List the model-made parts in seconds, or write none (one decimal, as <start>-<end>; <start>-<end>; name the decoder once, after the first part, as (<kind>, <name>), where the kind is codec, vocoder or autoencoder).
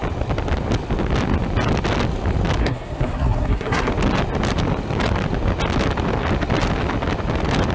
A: 2.6-3.9 (codec, SNAC)